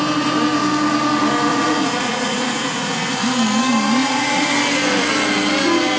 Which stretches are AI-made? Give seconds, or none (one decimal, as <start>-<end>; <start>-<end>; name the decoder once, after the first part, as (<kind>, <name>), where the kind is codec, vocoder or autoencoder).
1.5-3.2 (vocoder, Vocos); 4.0-4.5